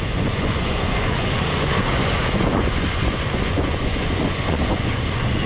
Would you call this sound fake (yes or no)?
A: yes